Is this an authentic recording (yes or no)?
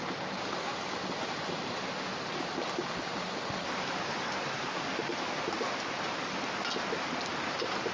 yes